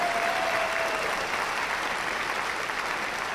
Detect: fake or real fake